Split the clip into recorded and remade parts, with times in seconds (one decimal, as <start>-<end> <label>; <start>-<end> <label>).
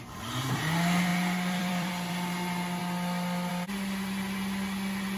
0.0-1.1 recorded; 1.1-2.1 remade; 2.1-5.2 recorded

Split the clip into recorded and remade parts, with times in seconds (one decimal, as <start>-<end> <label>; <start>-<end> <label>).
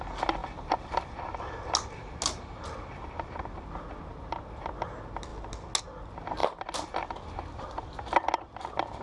0.0-9.0 recorded